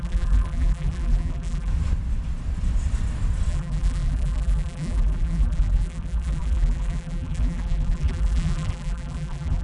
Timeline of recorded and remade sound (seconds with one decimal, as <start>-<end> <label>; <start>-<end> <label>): 0.0-1.7 remade; 1.7-3.5 recorded; 3.5-9.6 remade